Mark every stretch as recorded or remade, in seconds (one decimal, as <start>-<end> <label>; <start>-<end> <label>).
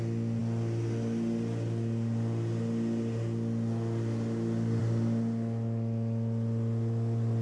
0.0-7.4 recorded